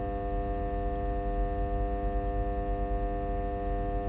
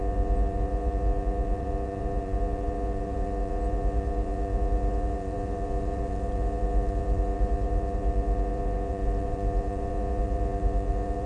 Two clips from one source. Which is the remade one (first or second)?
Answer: second